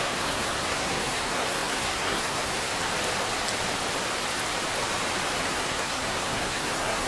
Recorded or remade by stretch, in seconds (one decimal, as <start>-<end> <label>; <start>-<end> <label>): 0.0-2.7 remade; 2.7-5.5 recorded; 5.5-7.1 remade